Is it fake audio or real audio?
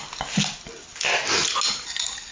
real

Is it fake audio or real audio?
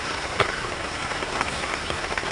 fake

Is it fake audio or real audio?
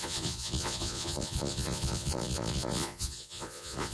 fake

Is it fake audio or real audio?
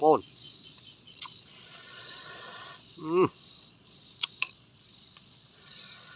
fake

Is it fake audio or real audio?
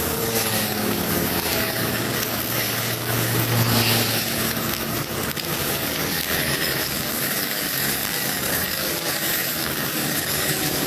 fake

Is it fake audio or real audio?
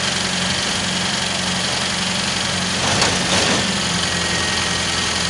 real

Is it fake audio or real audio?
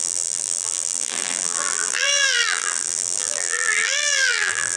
fake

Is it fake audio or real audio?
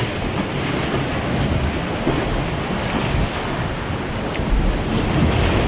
real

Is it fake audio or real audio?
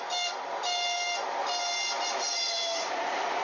real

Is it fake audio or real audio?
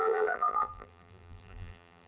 fake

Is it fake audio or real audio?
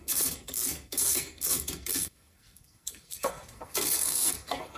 fake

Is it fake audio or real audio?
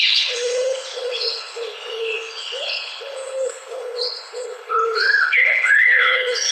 fake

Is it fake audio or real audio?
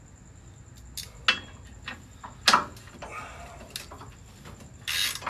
real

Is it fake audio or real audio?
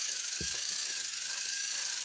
fake